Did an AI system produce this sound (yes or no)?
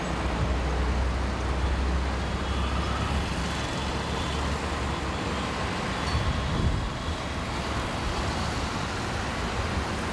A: no